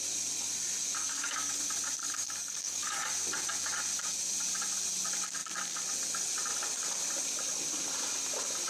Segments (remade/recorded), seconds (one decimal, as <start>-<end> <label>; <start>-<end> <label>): 0.0-1.0 recorded; 1.0-1.6 remade; 1.6-2.0 recorded; 2.0-3.1 remade; 3.1-8.7 recorded